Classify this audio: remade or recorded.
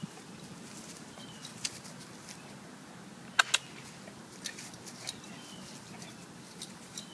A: recorded